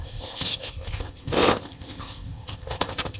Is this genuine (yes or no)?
no